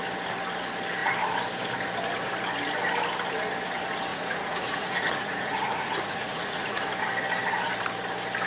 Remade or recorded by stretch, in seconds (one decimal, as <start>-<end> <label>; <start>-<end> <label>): 0.0-4.1 recorded; 4.1-6.8 remade; 6.8-8.5 recorded